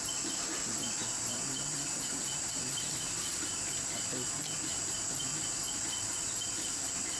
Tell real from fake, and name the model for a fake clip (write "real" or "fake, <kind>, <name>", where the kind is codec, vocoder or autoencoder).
real